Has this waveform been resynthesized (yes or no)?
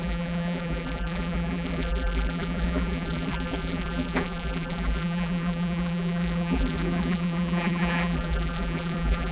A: yes